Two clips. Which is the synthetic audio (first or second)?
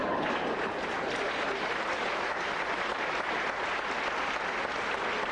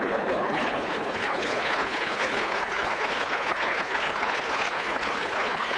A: second